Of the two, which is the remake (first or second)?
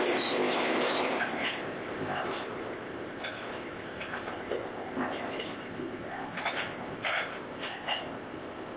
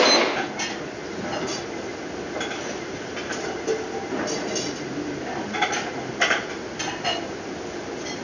first